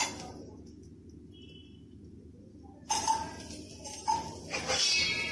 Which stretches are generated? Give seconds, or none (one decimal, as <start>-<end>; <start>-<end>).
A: none

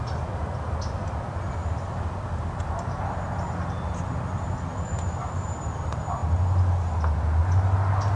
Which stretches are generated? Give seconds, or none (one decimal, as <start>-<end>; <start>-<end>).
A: none